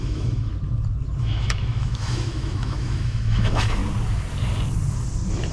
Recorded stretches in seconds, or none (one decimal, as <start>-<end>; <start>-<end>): 0.5-1.2; 3.8-5.5